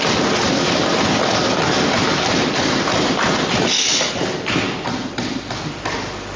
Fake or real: real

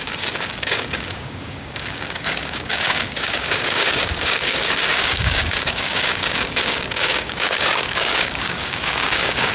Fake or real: fake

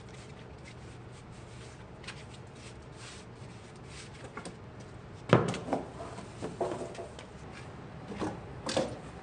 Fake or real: real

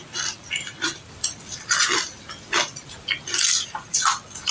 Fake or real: real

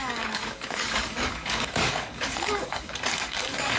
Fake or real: fake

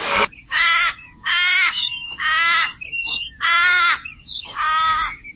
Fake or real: fake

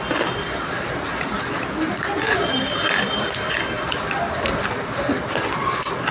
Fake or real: real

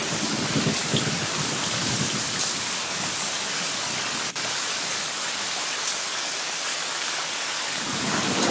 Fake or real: fake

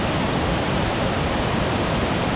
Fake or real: real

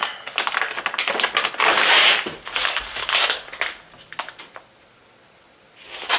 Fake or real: real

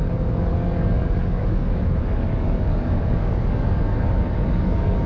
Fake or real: fake